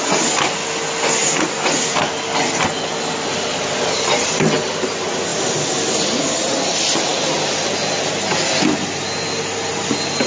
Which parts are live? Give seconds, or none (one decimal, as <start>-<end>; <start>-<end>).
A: 0.0-10.3